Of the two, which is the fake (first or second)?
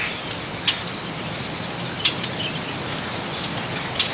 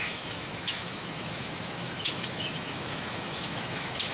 second